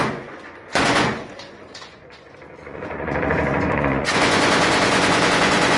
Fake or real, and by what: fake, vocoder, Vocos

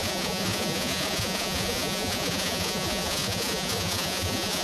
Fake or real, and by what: fake, vocoder, Vocos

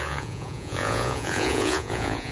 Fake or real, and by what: fake, vocoder, Vocos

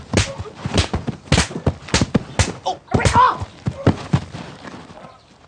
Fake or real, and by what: real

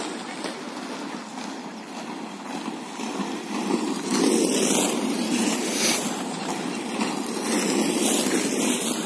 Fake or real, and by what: real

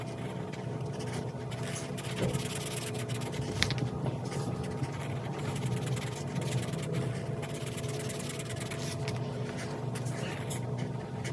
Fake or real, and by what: real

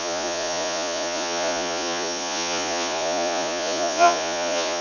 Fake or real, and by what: fake, vocoder, Vocos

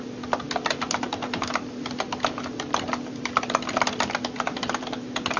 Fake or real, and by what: real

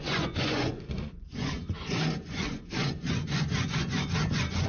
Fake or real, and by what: fake, vocoder, Vocos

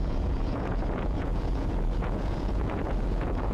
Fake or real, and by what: fake, vocoder, Vocos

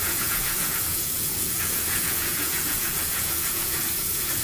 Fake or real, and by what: fake, vocoder, Vocos